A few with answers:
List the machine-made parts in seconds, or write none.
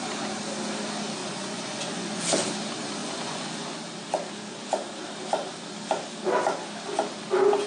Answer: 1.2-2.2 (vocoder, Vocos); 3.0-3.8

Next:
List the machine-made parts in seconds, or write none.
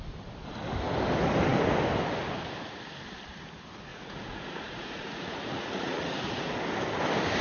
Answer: 3.9-6.4 (vocoder, Vocos)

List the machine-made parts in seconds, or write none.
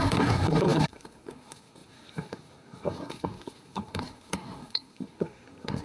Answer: 0.0-5.8 (codec, SNAC)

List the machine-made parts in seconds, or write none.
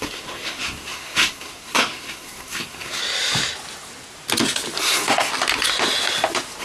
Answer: 0.0-3.0 (codec, SNAC); 4.8-5.3